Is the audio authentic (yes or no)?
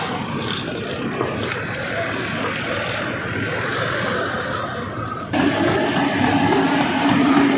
no